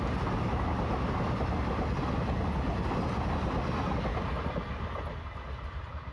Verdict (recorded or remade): recorded